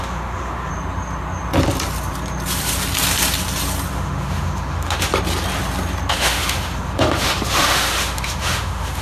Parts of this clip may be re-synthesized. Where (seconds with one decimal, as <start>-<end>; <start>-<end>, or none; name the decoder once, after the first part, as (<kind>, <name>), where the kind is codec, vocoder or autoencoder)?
0.0-0.7 (autoencoder, DAC-VAE); 3.9-5.1; 6.1-9.0

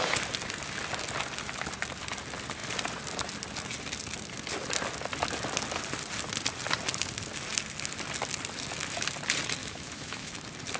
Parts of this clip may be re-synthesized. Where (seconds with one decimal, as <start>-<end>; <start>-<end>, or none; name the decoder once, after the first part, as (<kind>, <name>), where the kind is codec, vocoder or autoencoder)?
9.6-10.3 (autoencoder, DAC-VAE)

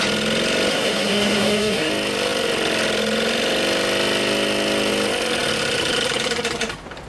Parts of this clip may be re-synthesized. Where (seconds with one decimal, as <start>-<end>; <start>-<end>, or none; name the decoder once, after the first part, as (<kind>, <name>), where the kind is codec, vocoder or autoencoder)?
0.7-1.9 (codec, SNAC)

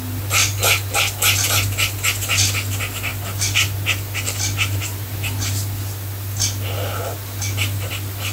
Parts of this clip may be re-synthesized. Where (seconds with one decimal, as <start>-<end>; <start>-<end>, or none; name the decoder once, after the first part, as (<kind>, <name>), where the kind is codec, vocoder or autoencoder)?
none

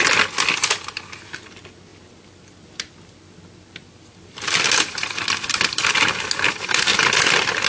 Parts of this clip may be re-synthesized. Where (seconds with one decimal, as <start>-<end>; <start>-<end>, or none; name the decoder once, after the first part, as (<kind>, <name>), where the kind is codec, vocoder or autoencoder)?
1.9-4.7 (vocoder, BigVGAN v2); 6.9-7.7

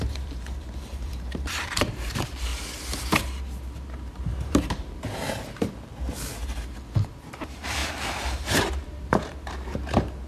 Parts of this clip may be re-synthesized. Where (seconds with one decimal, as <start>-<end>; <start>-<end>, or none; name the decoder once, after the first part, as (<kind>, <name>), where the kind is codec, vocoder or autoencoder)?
0.0-2.5 (vocoder, BigVGAN v2); 3.0-5.9; 7.1-10.3